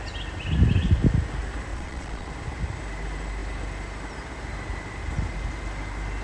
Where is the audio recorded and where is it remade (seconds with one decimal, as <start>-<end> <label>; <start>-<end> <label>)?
0.0-1.7 recorded; 1.7-2.3 remade; 2.3-6.2 recorded